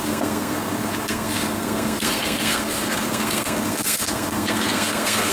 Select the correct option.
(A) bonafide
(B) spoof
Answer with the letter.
B